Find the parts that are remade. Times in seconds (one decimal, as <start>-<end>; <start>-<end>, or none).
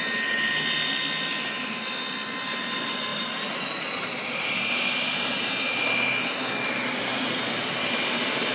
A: none